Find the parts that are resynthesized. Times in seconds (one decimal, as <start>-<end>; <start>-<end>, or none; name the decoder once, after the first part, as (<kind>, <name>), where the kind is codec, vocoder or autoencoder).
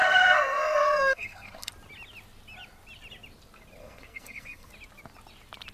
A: 0.0-1.7 (codec, SNAC); 3.8-4.7